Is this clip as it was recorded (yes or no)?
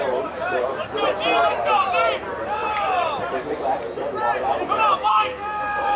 no